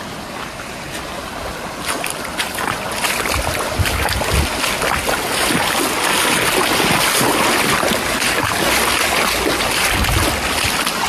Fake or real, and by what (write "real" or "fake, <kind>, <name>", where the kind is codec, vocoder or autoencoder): real